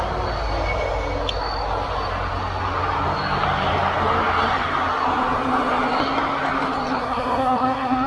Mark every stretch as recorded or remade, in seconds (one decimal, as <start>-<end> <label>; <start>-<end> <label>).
0.0-7.0 recorded; 7.0-8.1 remade